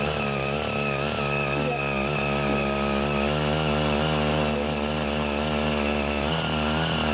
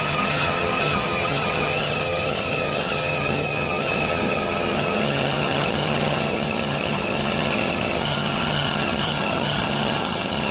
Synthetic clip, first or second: second